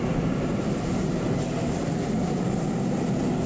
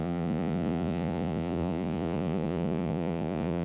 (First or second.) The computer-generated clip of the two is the second